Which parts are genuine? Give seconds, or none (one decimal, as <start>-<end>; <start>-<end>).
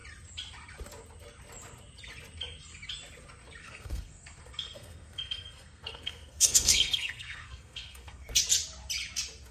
0.0-3.6; 8.3-9.5